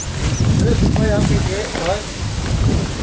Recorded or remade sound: recorded